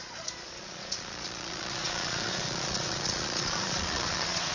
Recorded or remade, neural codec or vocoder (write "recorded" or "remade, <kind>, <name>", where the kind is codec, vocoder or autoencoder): remade, vocoder, Vocos